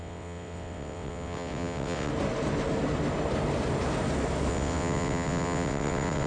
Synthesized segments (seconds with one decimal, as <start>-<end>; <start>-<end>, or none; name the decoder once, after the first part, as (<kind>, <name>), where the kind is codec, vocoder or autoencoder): 0.0-2.1 (vocoder, WaveNeXt); 4.5-6.3